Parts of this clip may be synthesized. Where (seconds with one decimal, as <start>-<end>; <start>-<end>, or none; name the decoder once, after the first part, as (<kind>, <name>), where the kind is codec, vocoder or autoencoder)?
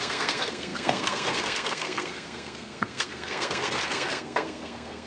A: 0.0-5.1 (codec, SNAC)